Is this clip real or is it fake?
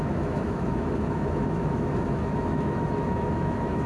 fake